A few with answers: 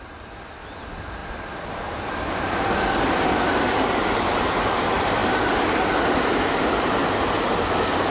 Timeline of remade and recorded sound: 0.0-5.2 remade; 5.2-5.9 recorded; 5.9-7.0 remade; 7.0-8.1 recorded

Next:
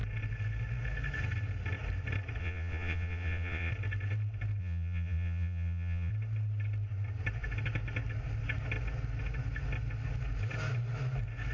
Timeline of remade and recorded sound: 0.0-2.4 recorded; 2.4-3.7 remade; 3.7-4.6 recorded; 4.6-6.1 remade; 6.1-11.5 recorded

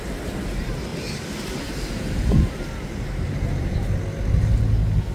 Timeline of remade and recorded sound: 0.0-0.9 recorded; 0.9-4.0 remade; 4.0-5.1 recorded

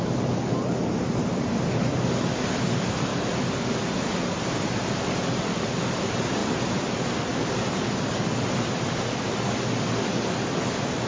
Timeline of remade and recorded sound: 0.0-0.5 recorded; 0.5-2.1 remade; 2.1-11.1 recorded